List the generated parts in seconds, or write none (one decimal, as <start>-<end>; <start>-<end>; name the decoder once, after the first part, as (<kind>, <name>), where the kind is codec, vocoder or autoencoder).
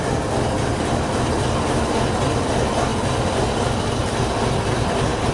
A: none